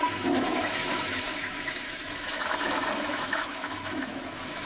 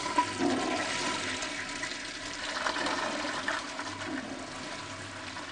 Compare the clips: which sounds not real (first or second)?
first